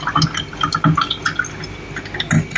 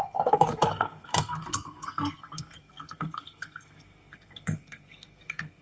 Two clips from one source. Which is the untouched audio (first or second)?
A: first